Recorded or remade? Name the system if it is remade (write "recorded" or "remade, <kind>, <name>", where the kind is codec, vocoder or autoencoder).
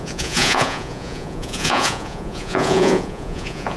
remade, vocoder, Vocos